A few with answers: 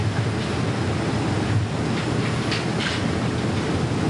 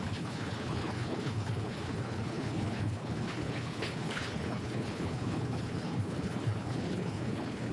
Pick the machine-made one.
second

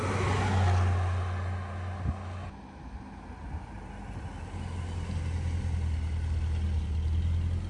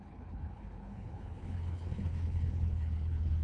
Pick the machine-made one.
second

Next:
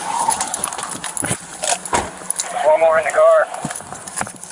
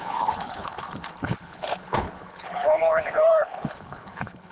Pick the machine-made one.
second